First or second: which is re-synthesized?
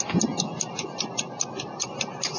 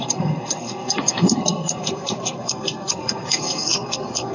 second